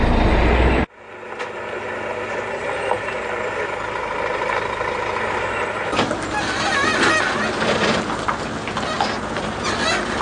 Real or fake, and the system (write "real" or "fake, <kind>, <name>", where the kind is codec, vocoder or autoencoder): real